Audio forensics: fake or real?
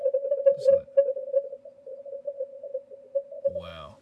real